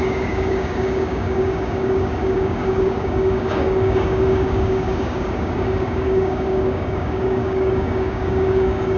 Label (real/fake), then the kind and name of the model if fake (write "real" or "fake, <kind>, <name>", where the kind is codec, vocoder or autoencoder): fake, codec, DAC